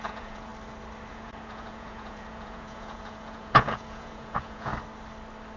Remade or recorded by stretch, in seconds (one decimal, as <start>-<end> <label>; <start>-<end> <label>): 0.0-0.5 remade; 0.5-1.1 recorded; 1.1-4.7 remade; 4.7-5.6 recorded